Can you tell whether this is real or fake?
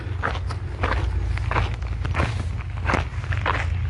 real